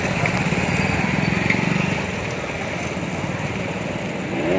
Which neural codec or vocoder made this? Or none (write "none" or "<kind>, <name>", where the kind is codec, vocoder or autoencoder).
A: none